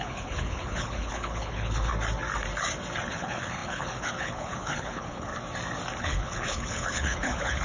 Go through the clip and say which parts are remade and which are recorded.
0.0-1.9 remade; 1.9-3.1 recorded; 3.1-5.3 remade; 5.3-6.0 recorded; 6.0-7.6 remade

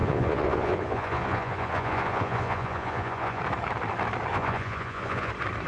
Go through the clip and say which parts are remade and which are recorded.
0.0-3.4 remade; 3.4-4.3 recorded; 4.3-5.3 remade; 5.3-5.7 recorded

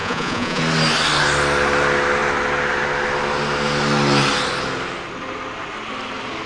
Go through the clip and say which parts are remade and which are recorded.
0.0-0.6 remade; 0.6-6.5 recorded

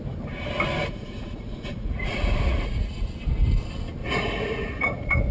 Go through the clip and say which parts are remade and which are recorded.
0.0-0.9 recorded; 0.9-3.0 remade; 3.0-4.0 recorded; 4.0-5.3 remade

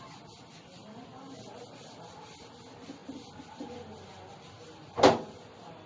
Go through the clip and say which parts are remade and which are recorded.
0.0-5.9 recorded

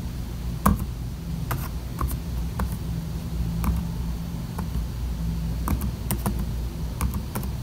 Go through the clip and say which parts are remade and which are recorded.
0.0-7.6 recorded

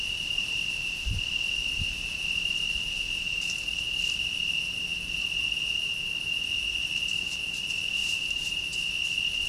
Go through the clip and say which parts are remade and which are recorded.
0.0-8.0 recorded; 8.0-9.1 remade; 9.1-9.5 recorded

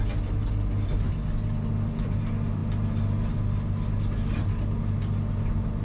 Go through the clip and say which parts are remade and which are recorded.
0.0-5.8 recorded